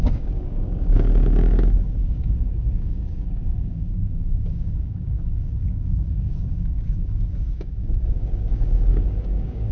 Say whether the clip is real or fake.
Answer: fake